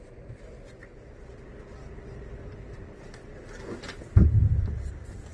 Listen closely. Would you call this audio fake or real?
real